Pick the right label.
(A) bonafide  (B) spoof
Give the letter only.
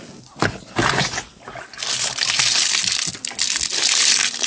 A